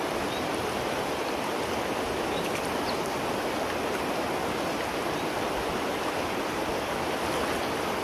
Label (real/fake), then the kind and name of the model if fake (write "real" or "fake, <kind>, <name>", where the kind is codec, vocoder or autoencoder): real